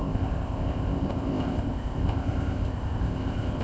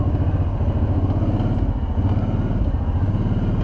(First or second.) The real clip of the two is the second